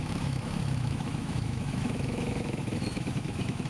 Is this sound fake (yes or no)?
yes